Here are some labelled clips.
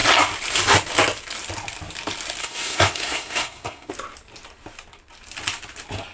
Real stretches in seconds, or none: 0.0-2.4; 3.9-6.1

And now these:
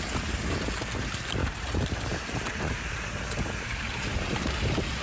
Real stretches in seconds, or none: 0.0-1.4; 4.4-5.0

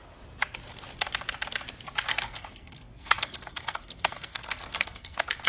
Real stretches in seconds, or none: 0.0-2.1

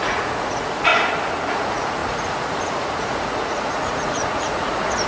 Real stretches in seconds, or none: 0.9-1.5

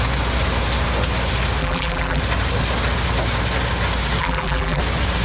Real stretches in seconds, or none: 0.0-1.6; 2.2-4.2; 4.8-5.2

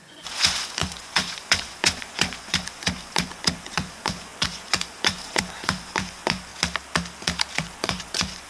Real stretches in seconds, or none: 6.5-7.6

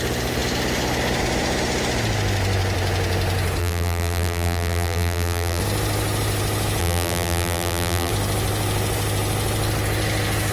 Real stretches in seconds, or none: 0.0-3.6; 5.6-6.8; 8.1-10.5